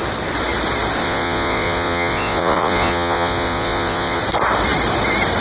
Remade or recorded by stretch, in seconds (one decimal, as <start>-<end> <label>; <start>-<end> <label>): 0.0-1.0 recorded; 1.0-4.2 remade; 4.2-5.4 recorded